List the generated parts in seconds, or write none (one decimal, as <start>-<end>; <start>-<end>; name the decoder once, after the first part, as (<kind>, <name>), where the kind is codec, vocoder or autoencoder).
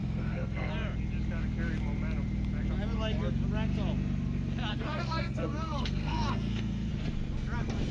0.0-0.7 (codec, SNAC); 4.7-6.9